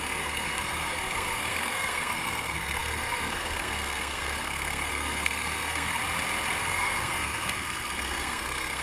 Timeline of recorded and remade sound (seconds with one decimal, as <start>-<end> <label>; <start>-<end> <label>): 0.0-6.0 remade; 6.0-6.6 recorded; 6.6-8.8 remade